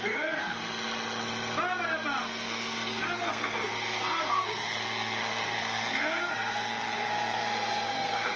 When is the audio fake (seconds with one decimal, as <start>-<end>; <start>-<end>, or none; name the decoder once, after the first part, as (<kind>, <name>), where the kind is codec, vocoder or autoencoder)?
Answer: 0.0-0.6 (codec, SNAC); 2.2-8.4